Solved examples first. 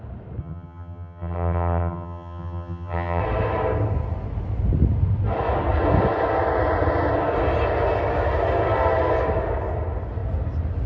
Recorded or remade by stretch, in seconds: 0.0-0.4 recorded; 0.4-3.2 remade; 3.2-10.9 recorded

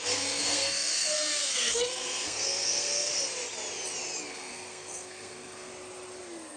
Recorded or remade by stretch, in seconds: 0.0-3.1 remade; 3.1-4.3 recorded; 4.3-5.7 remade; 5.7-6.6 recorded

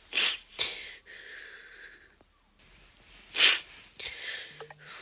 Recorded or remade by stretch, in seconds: 0.0-5.0 recorded

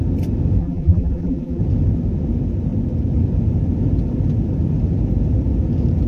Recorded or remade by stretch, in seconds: 0.0-0.6 recorded; 0.6-1.6 remade; 1.6-6.1 recorded

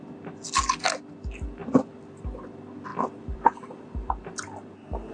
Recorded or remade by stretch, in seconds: 0.0-1.6 recorded; 1.6-2.2 remade; 2.2-2.9 recorded; 2.9-4.1 remade; 4.1-5.1 recorded

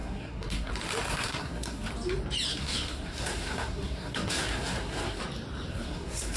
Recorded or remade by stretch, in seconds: 0.0-0.7 remade; 0.7-1.1 recorded; 1.1-1.9 remade; 1.9-2.5 recorded; 2.5-5.2 remade; 5.2-5.7 recorded; 5.7-6.4 remade

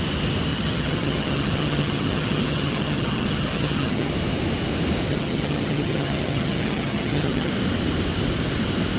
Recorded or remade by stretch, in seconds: 0.0-0.5 recorded; 0.5-4.1 remade; 4.1-5.1 recorded; 5.1-7.5 remade; 7.5-9.0 recorded